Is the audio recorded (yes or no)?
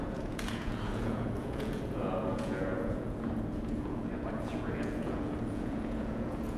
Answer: no